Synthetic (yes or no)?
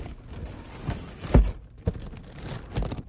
no